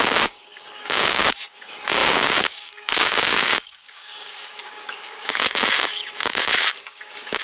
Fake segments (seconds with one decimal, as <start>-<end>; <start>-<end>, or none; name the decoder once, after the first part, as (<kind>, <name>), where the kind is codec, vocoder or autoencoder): 0.0-7.4 (codec, DAC)